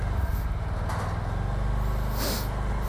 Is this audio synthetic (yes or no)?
no